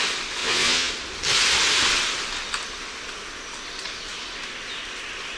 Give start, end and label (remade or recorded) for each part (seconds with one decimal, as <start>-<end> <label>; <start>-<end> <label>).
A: 0.0-0.4 recorded; 0.4-0.9 remade; 0.9-5.4 recorded